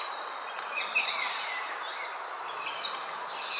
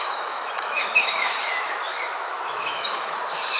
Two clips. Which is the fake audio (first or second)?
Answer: second